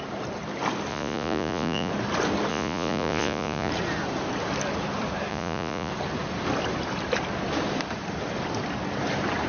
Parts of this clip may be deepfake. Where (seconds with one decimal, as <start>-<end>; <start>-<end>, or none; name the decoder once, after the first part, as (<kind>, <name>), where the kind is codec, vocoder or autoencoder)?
0.9-1.9 (vocoder, Vocos); 2.5-3.7; 5.3-5.9